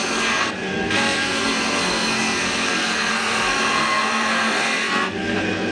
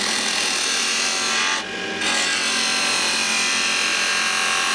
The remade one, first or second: first